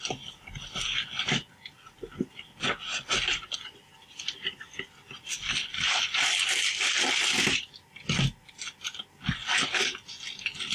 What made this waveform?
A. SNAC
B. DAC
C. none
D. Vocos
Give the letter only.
C